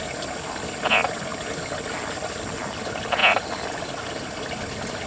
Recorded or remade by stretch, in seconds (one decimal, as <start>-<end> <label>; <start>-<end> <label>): 0.0-5.1 recorded